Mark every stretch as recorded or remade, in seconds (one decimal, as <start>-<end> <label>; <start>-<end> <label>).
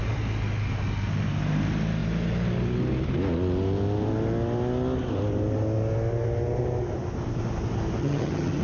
0.0-8.0 recorded; 8.0-8.6 remade